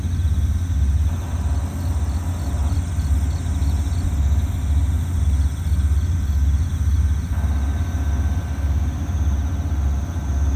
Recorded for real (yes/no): yes